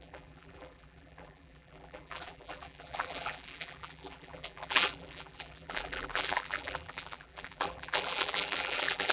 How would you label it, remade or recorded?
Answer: remade